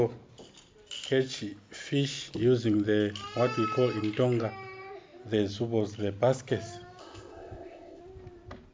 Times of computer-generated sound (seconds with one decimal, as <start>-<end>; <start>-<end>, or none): 7.0-8.0